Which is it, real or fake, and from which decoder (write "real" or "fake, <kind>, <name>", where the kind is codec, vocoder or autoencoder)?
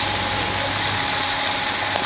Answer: real